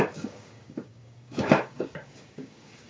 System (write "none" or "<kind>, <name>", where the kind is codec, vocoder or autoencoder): codec, DAC